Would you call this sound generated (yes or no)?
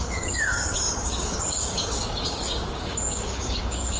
yes